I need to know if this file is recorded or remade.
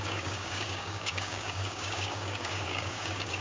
remade